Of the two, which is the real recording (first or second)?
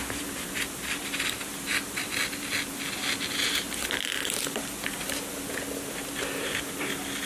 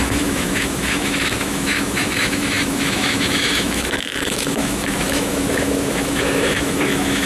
first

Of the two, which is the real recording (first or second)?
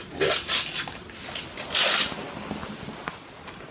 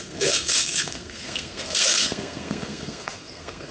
first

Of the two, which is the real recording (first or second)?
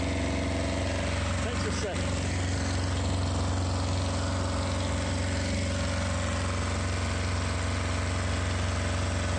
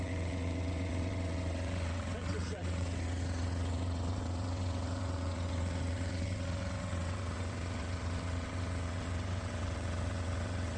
first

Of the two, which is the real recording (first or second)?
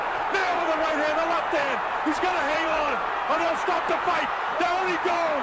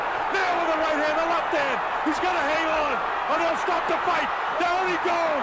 second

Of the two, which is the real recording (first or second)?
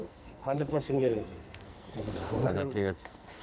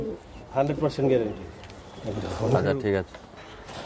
second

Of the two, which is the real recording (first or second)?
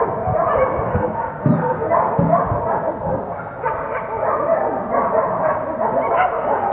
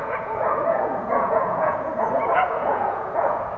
first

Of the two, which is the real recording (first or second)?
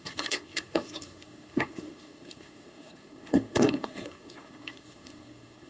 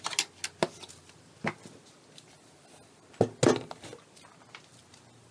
second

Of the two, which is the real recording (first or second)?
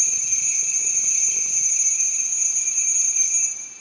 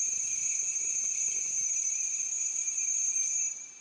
first